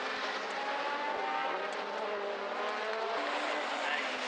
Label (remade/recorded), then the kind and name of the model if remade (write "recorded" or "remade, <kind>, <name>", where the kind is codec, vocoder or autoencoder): recorded